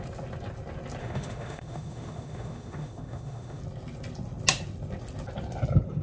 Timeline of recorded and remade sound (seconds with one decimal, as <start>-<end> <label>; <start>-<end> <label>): 0.0-1.0 recorded; 1.0-3.6 remade; 3.6-6.0 recorded